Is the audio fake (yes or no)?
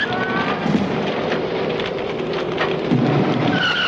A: no